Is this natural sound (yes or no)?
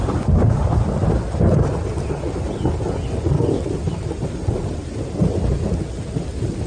yes